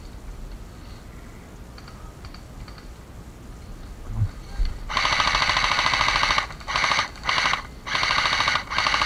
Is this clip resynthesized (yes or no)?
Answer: no